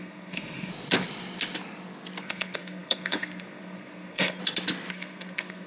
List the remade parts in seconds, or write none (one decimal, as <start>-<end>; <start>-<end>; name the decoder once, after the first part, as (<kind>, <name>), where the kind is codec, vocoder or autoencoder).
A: 0.0-0.7 (codec, SNAC); 2.2-4.4; 4.9-5.7